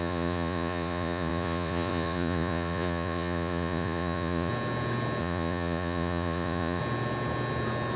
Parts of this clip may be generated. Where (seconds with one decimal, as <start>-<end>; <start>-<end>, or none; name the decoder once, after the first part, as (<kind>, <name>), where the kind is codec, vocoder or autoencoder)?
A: 0.0-4.5 (vocoder, Vocos); 5.2-6.8